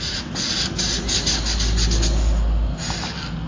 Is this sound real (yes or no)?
yes